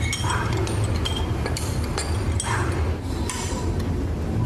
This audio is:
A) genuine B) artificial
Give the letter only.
A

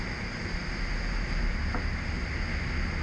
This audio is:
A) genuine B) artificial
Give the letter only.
A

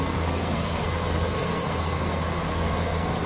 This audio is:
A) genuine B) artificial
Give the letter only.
B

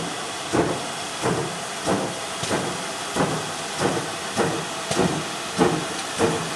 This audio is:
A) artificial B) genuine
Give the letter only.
B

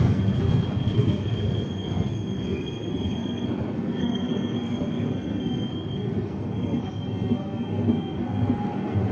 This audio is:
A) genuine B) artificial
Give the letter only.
B